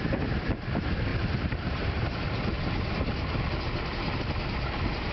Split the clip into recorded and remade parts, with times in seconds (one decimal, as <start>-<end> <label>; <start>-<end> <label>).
0.0-1.1 recorded; 1.1-2.6 remade; 2.6-5.1 recorded